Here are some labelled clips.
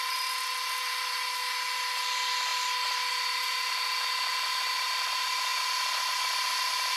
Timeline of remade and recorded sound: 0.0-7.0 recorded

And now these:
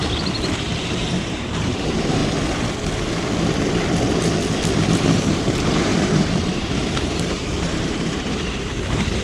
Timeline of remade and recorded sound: 0.0-0.8 recorded; 0.8-2.2 remade; 2.2-4.9 recorded; 4.9-9.2 remade

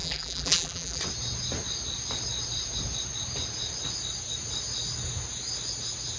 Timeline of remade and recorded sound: 0.0-1.0 remade; 1.0-6.2 recorded

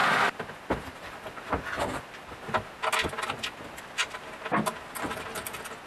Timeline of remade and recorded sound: 0.0-2.4 remade; 2.4-5.9 recorded

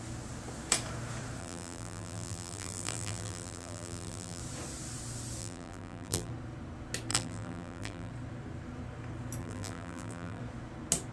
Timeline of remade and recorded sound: 0.0-1.4 recorded; 1.4-4.4 remade; 4.4-5.4 recorded; 5.4-6.3 remade; 6.3-7.1 recorded; 7.1-8.1 remade; 8.1-9.4 recorded; 9.4-10.4 remade; 10.4-11.1 recorded

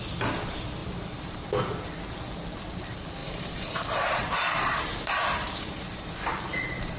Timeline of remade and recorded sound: 0.0-0.8 recorded; 0.8-1.6 remade; 1.6-3.2 recorded; 3.2-7.0 remade